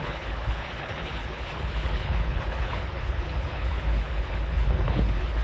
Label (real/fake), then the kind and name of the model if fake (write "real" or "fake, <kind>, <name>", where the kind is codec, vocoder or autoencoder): fake, codec, HILCodec